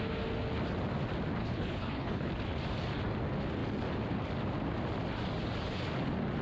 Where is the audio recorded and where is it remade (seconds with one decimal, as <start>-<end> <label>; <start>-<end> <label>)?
0.0-1.4 recorded; 1.4-2.3 remade; 2.3-6.4 recorded